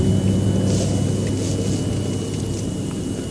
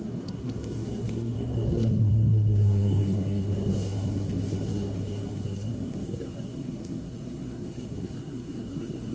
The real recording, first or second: first